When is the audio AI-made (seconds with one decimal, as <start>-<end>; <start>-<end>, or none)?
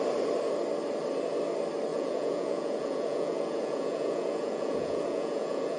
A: 1.9-5.8